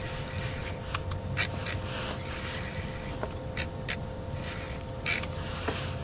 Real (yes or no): yes